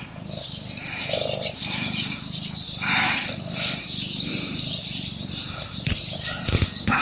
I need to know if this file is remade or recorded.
remade